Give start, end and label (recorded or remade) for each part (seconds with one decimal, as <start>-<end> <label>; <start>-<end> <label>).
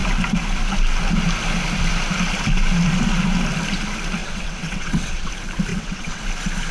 0.0-4.2 recorded; 4.2-5.3 remade; 5.3-5.7 recorded; 5.7-6.2 remade; 6.2-6.7 recorded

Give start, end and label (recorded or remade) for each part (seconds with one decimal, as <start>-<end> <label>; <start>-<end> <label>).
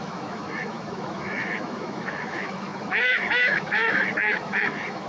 0.0-5.1 remade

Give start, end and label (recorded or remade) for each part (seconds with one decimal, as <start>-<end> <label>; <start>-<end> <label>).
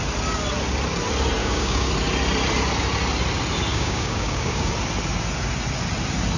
0.0-1.4 recorded; 1.4-1.9 remade; 1.9-3.7 recorded; 3.7-4.7 remade; 4.7-6.4 recorded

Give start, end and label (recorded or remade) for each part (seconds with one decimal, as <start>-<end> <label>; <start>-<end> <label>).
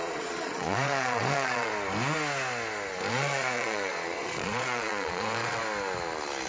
0.0-1.7 remade; 1.7-3.1 recorded; 3.1-5.6 remade; 5.6-6.5 recorded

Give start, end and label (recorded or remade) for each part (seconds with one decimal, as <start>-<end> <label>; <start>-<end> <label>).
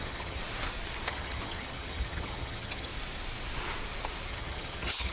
0.0-0.4 remade; 0.4-1.1 recorded; 1.1-2.9 remade; 2.9-4.3 recorded; 4.3-5.1 remade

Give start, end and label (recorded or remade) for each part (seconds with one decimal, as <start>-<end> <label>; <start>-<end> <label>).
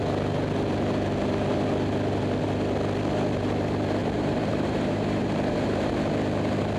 0.0-4.0 recorded; 4.0-5.9 remade; 5.9-6.8 recorded